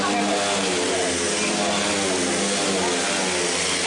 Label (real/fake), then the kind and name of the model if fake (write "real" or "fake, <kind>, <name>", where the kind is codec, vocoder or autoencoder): real